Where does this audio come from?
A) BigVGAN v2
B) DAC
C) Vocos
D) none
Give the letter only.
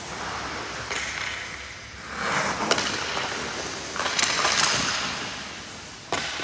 D